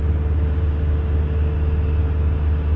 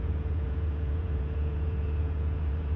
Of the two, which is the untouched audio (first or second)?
first